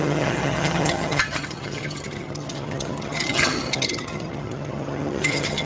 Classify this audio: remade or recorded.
remade